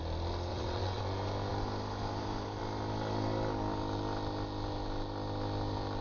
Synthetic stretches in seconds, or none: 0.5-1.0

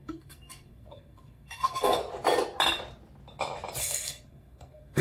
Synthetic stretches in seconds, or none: 0.0-2.0; 3.8-5.0

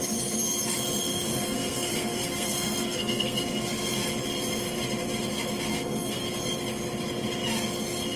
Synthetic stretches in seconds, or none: 1.1-3.4; 5.7-6.3

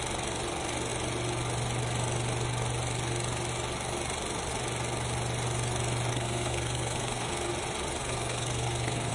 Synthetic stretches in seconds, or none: 6.1-7.5; 8.0-9.1

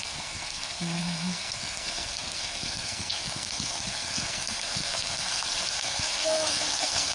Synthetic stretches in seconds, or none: 0.0-7.1

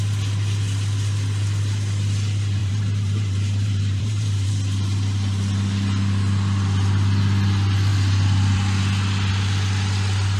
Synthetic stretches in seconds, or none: 2.6-4.5

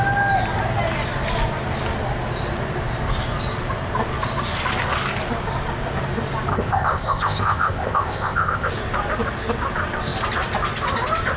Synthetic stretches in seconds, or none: 6.5-8.7